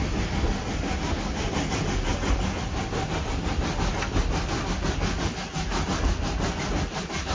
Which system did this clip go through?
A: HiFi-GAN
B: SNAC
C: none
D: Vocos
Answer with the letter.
C